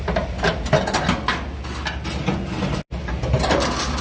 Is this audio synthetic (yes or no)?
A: no